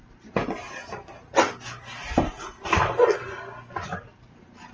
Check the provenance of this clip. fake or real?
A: real